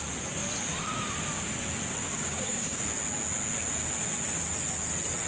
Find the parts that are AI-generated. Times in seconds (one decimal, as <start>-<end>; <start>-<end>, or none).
2.0-2.8

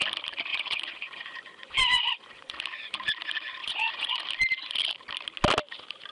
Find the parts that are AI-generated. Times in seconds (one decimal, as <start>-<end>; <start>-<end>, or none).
0.5-2.5; 3.6-4.2

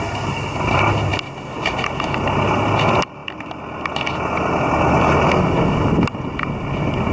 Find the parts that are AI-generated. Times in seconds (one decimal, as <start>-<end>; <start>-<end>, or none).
none

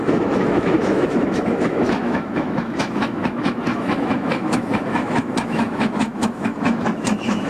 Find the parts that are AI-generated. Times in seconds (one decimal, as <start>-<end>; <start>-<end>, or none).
0.0-7.5